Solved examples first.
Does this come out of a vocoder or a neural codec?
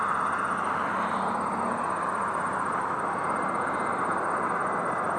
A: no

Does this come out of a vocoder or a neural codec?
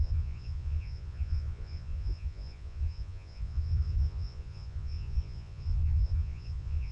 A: yes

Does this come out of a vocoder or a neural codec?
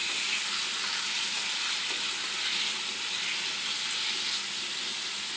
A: no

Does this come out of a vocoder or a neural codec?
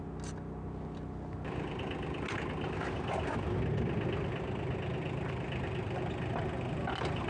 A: no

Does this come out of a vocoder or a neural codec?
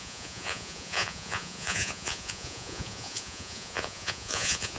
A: yes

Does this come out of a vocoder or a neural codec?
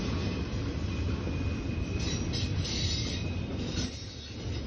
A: no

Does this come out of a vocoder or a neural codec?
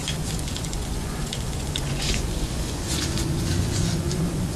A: yes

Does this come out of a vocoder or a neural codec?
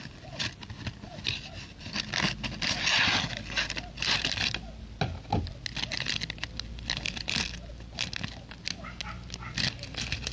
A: no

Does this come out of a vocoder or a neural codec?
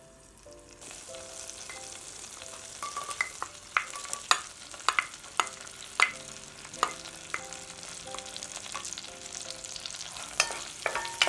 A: no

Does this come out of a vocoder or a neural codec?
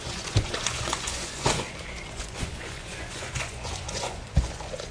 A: yes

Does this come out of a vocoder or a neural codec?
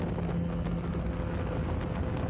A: no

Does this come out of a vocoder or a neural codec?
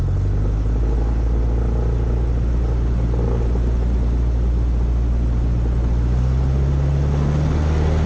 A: no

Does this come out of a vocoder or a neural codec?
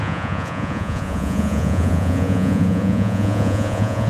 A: yes